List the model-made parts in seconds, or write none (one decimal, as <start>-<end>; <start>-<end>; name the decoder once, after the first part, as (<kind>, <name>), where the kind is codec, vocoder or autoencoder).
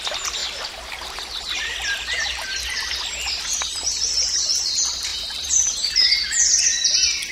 none